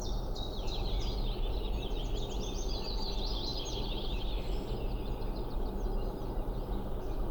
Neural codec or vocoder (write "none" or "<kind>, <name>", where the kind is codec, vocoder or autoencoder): none